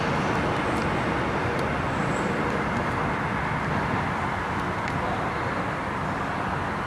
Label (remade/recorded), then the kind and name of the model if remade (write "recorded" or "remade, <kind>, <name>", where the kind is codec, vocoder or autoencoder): recorded